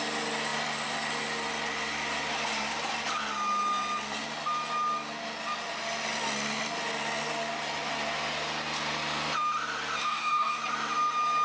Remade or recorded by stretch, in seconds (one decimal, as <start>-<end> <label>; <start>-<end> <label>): 0.0-10.0 recorded; 10.0-10.6 remade; 10.6-11.4 recorded